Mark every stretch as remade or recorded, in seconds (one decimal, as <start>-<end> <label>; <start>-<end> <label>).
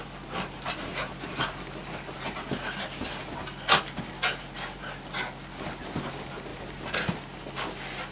0.0-8.1 recorded